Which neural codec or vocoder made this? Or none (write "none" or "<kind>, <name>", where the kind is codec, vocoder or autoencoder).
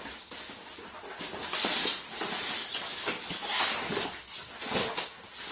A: none